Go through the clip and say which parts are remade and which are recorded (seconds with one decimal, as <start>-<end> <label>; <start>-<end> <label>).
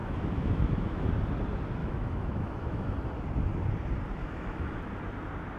0.0-1.1 remade; 1.1-1.8 recorded; 1.8-2.9 remade; 2.9-4.2 recorded; 4.2-4.8 remade; 4.8-5.6 recorded